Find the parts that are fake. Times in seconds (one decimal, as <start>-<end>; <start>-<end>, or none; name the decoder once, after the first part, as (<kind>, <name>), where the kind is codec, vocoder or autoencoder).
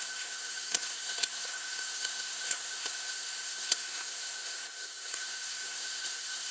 0.0-6.5 (codec, SNAC)